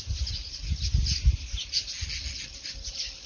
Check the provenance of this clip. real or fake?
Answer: real